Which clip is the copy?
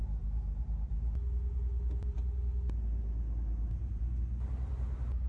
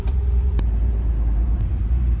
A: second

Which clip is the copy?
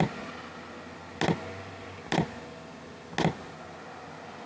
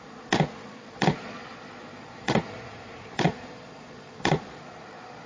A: second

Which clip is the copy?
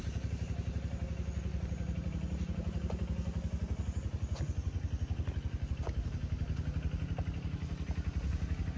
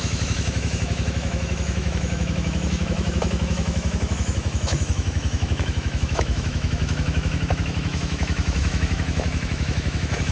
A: second